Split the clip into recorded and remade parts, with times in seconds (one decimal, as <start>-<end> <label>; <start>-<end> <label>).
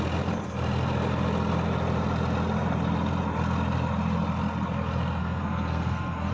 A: 0.0-5.2 recorded; 5.2-6.3 remade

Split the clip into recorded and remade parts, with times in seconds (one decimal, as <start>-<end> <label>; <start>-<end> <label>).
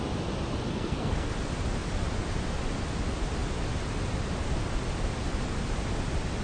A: 0.0-0.7 recorded; 0.7-1.3 remade; 1.3-6.4 recorded